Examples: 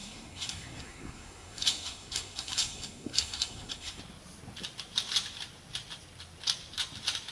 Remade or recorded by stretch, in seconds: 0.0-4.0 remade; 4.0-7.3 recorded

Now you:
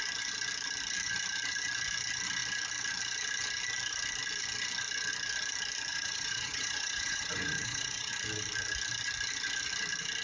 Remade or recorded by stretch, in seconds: 0.0-5.9 recorded; 5.9-8.1 remade; 8.1-10.2 recorded